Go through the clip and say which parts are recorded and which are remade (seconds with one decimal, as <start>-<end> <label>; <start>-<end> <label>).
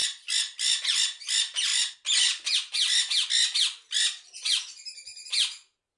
0.0-6.0 recorded